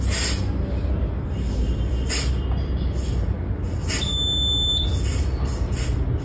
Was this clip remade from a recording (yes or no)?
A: no